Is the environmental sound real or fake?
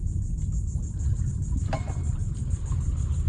real